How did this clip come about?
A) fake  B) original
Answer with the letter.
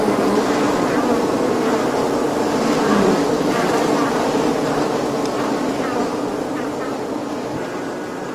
A